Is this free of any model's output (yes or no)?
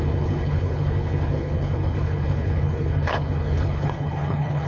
no